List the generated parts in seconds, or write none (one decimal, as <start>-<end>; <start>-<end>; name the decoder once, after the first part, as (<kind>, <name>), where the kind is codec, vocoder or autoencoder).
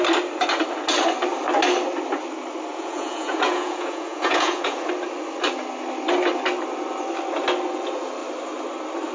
2.7-4.9 (vocoder, Vocos)